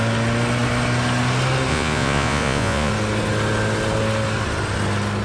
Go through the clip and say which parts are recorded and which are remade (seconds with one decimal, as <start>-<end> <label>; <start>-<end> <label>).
0.0-1.7 recorded; 1.7-2.9 remade; 2.9-5.2 recorded